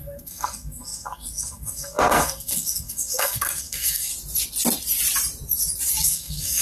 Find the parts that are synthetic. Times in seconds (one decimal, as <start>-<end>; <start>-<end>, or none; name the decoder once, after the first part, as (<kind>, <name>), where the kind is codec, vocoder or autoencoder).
0.0-4.1 (codec, SNAC); 6.0-6.6